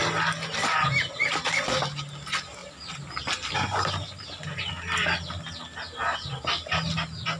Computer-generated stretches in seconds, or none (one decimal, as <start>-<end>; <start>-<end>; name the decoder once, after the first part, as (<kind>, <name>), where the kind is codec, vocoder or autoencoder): none